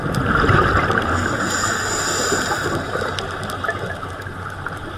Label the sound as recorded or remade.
recorded